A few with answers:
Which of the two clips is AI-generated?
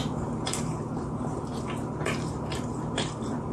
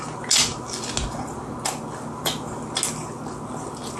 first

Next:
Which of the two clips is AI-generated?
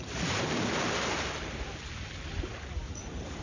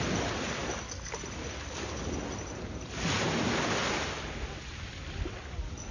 first